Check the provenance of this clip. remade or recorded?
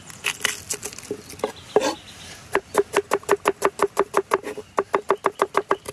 recorded